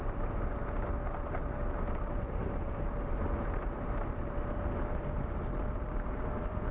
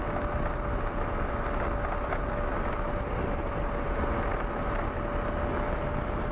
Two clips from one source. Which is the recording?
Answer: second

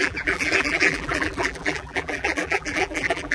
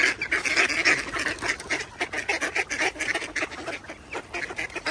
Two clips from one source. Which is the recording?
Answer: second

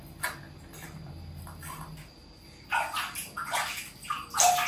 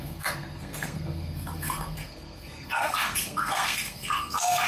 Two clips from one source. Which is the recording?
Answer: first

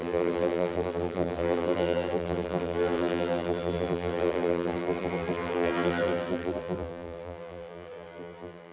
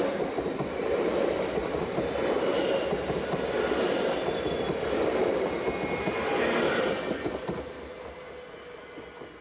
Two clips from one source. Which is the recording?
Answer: second